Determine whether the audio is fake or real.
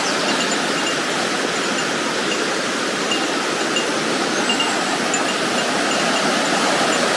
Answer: real